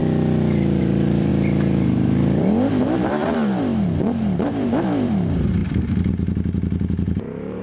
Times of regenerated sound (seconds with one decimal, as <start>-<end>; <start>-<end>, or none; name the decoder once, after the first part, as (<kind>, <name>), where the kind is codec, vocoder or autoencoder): 0.8-7.6 (vocoder, BigVGAN v2)